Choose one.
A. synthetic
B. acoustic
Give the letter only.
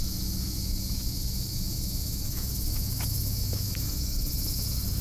A